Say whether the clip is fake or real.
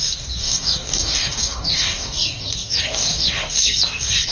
fake